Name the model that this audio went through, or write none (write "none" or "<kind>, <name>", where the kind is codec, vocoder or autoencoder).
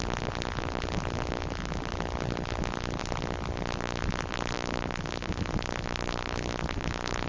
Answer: none